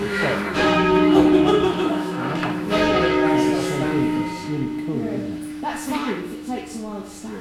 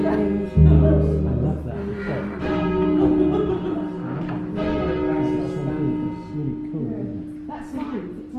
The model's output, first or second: first